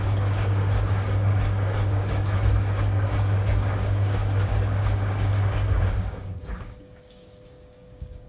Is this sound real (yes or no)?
no